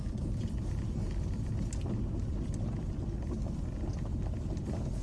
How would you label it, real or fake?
real